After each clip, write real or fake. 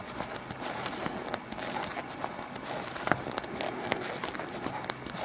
real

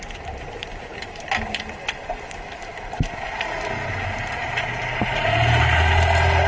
real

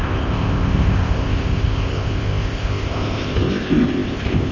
fake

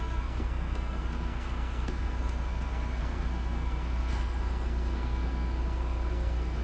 fake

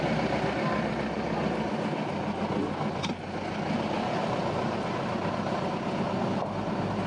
real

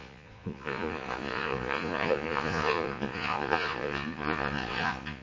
fake